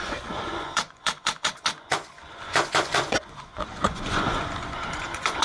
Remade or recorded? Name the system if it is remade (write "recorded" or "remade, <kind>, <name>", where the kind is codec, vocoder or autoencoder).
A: remade, vocoder, Vocos